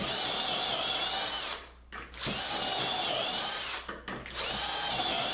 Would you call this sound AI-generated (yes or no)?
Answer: no